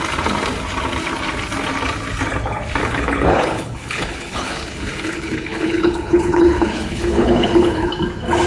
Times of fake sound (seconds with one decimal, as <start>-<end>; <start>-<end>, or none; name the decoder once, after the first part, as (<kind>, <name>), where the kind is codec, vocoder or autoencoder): 2.8-7.9 (codec, HILCodec)